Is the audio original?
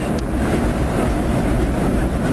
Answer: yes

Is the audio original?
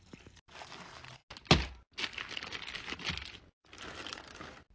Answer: yes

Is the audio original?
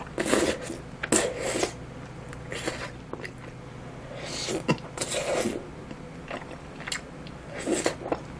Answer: yes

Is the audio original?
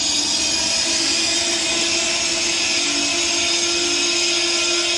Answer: yes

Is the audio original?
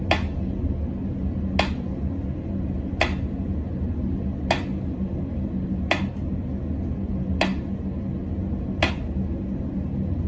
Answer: yes